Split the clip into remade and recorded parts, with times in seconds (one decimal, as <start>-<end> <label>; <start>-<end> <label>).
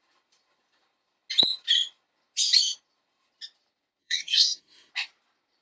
0.0-4.0 recorded; 4.0-4.9 remade; 4.9-5.6 recorded